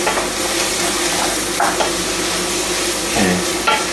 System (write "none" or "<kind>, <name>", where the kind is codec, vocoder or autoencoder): none